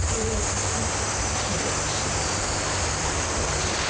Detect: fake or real fake